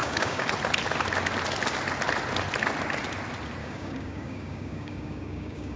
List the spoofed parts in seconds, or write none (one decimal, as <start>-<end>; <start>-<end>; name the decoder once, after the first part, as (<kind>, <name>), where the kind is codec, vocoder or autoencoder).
0.0-0.5 (codec, DAC); 3.6-5.8